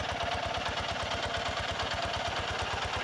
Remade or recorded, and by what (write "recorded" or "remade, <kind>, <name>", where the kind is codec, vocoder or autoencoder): recorded